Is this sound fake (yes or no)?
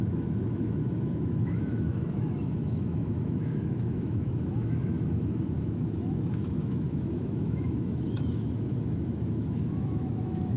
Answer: yes